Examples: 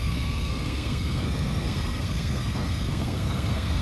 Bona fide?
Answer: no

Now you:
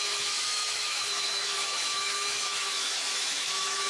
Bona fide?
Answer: no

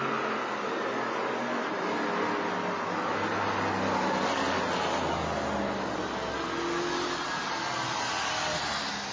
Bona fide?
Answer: yes